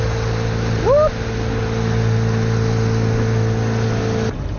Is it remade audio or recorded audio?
recorded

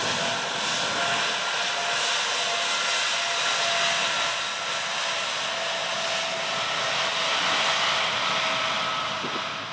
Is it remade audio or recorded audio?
recorded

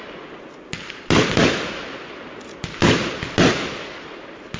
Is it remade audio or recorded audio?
recorded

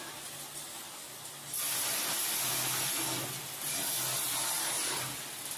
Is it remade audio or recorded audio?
recorded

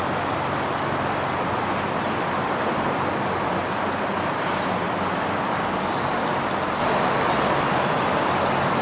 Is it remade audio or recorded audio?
recorded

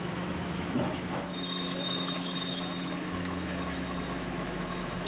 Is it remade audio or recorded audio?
remade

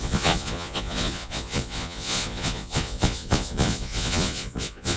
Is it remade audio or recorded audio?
remade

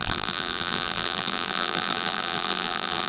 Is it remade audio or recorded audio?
remade